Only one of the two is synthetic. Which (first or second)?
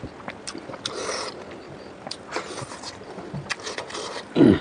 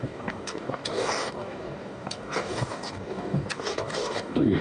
second